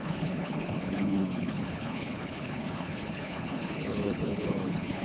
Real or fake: fake